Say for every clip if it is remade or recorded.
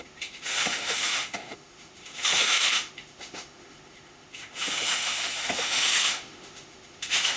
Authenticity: remade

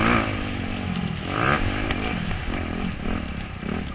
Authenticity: recorded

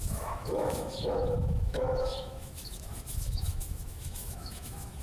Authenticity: remade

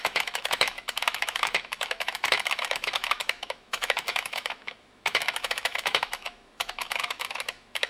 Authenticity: remade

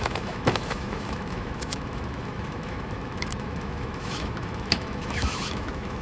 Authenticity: remade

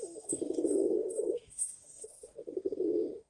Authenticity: remade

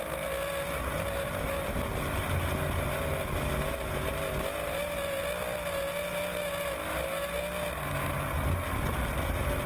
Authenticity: recorded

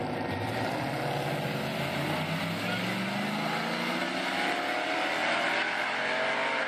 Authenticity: recorded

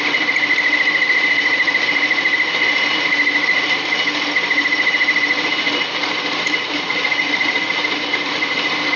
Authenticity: recorded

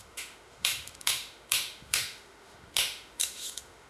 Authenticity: remade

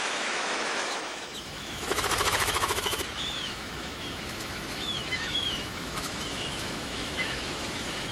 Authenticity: remade